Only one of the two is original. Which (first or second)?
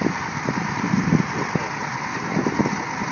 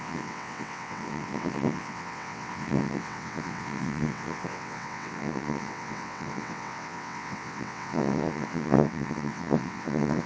first